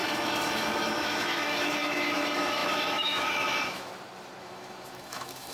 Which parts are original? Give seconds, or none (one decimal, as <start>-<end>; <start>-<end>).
3.9-4.4